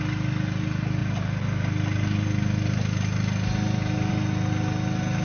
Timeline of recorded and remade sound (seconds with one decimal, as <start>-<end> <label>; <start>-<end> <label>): 0.0-5.2 recorded